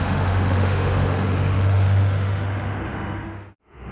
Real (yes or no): no